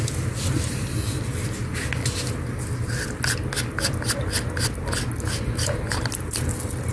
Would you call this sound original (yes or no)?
yes